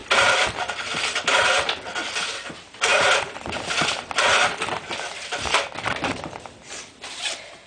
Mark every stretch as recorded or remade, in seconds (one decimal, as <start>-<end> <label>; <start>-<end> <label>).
0.0-1.3 remade; 1.3-2.9 recorded; 2.9-7.2 remade; 7.2-7.7 recorded